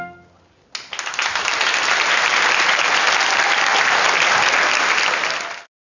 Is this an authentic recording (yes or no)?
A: yes